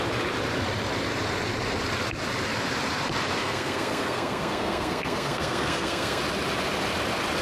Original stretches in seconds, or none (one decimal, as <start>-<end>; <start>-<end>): 0.0-3.4; 6.2-7.4